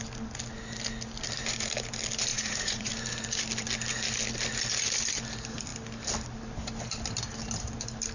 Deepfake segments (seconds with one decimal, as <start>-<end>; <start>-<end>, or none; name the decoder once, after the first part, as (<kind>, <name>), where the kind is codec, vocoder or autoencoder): 2.3-2.9 (vocoder, Vocos)